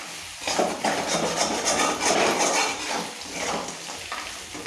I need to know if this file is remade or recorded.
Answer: recorded